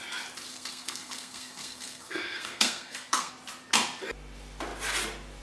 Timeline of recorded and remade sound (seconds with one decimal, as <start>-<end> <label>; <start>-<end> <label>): 0.0-0.5 recorded; 0.5-3.3 remade; 3.3-5.4 recorded